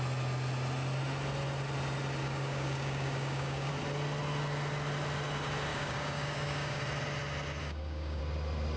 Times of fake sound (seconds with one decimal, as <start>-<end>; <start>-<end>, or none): 2.2-3.7; 5.7-6.8; 7.6-8.2